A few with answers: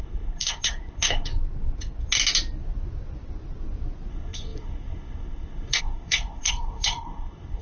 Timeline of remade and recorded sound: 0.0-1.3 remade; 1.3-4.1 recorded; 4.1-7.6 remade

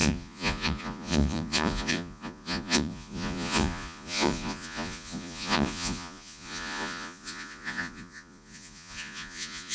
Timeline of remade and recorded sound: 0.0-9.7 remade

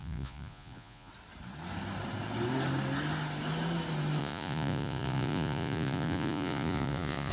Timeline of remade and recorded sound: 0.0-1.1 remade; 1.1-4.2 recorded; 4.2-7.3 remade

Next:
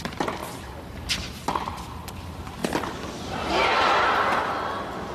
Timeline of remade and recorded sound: 0.0-2.6 remade; 2.6-5.1 recorded

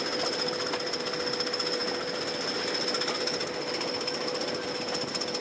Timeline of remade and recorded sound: 0.0-5.4 recorded

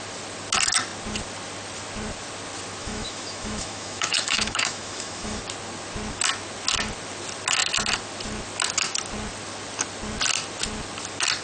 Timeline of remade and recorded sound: 0.0-2.8 recorded; 2.8-5.4 remade; 5.4-11.4 recorded

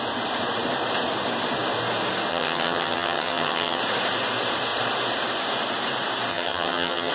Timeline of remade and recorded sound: 0.0-2.3 recorded; 2.3-3.8 remade; 3.8-6.3 recorded; 6.3-7.1 remade